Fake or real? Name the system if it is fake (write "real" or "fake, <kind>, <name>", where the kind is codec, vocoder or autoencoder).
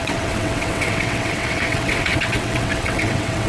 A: fake, vocoder, WaveNeXt